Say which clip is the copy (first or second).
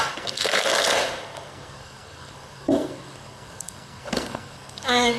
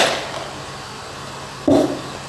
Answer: first